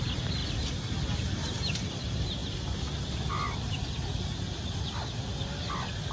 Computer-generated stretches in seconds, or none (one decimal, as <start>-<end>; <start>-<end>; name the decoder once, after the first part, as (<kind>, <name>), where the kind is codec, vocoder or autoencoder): none